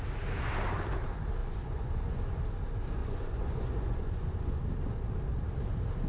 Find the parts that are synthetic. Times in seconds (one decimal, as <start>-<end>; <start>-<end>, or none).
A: 1.4-2.2; 3.0-4.6